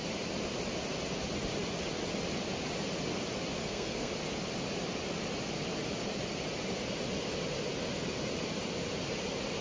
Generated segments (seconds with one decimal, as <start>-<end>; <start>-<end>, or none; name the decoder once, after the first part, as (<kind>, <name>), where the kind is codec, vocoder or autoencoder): 3.6-4.1 (codec, SNAC)